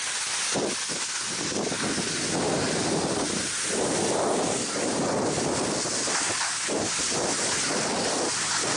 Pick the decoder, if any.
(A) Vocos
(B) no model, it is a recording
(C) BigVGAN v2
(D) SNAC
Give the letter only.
B